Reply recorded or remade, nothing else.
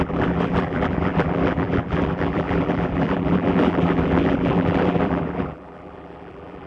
remade